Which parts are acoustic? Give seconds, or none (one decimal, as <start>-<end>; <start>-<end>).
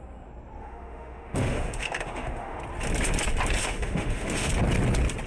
0.0-0.6; 2.6-3.6; 4.5-5.3